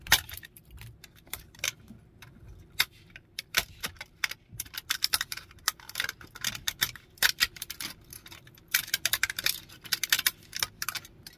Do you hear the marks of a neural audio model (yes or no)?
yes